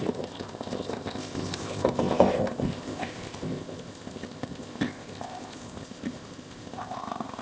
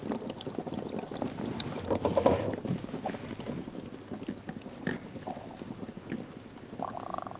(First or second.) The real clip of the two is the second